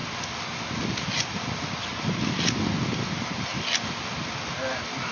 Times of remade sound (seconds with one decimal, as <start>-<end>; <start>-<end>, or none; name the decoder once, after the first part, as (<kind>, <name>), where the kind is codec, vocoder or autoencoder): none